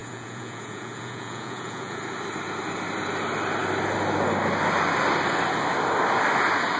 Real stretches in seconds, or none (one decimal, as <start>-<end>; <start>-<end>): 2.0-6.8